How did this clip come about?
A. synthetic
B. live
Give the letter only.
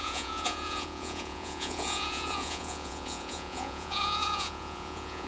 A